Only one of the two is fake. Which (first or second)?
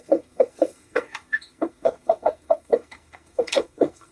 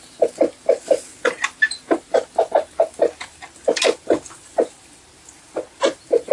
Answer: first